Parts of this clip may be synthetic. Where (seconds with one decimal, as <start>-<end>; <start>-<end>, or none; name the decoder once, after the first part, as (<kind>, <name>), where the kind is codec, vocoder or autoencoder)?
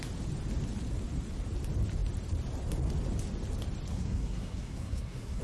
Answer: 3.9-5.4 (codec, SNAC)